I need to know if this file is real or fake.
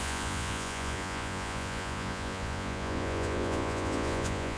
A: fake